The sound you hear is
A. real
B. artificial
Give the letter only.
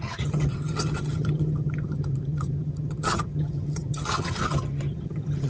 B